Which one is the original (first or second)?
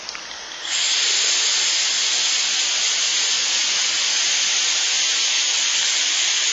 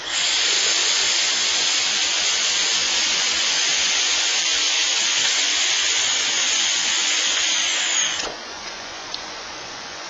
first